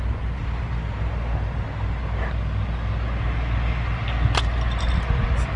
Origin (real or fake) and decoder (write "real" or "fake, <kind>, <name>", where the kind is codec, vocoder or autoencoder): real